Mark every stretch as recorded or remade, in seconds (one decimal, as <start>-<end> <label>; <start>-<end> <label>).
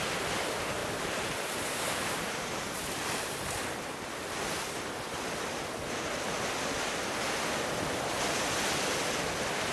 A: 0.0-0.8 recorded; 0.8-3.4 remade; 3.4-9.7 recorded